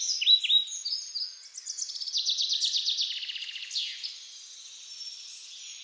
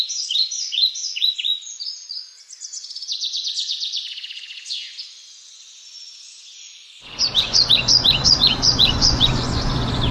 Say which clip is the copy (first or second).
second